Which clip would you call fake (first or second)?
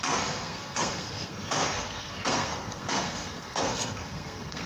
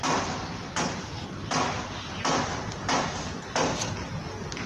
first